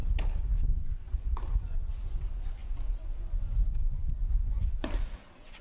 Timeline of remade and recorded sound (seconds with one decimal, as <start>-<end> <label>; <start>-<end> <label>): 0.0-0.8 recorded; 0.8-5.6 remade